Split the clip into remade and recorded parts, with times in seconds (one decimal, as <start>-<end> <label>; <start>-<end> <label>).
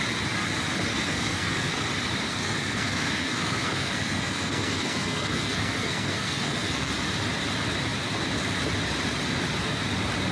0.0-0.9 recorded; 0.9-1.9 remade; 1.9-2.3 recorded; 2.3-6.9 remade; 6.9-10.3 recorded